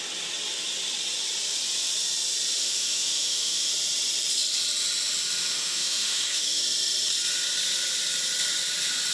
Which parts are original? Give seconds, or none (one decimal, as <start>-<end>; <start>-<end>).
0.0-2.6; 3.7-5.5; 6.6-9.1